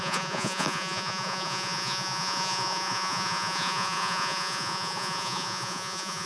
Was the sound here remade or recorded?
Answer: remade